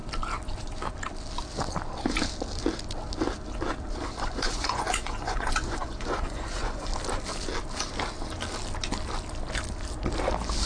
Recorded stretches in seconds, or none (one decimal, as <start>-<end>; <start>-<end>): 0.0-3.9; 6.9-10.7